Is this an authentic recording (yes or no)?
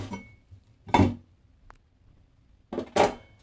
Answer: yes